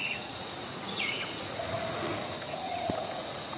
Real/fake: fake